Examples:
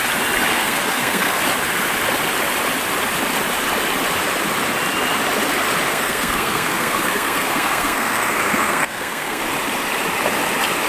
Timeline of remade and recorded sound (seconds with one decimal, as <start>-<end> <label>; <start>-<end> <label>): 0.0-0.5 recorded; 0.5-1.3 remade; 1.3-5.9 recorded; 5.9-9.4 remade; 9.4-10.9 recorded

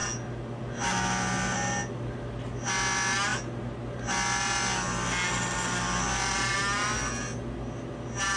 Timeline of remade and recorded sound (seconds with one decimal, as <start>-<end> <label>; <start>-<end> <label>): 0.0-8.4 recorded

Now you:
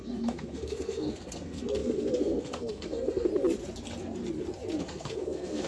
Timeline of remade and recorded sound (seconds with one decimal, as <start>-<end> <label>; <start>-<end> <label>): 0.0-3.3 remade; 3.3-4.8 recorded; 4.8-5.7 remade

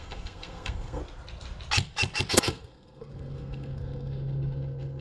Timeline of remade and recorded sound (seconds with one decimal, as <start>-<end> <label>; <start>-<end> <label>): 0.0-1.0 remade; 1.0-2.3 recorded; 2.3-5.0 remade

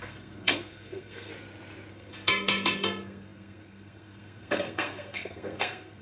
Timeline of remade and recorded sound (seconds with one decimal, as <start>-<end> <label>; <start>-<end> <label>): 0.0-1.3 remade; 1.3-1.9 recorded; 1.9-6.0 remade

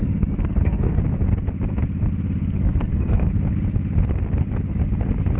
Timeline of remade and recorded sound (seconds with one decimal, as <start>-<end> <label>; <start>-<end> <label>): 0.0-1.0 remade; 1.0-2.4 recorded; 2.4-3.3 remade; 3.3-5.4 recorded

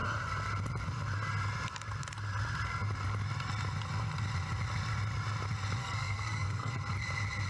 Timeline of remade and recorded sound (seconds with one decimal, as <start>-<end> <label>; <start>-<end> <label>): 0.0-5.8 recorded; 5.8-6.7 remade; 6.7-7.5 recorded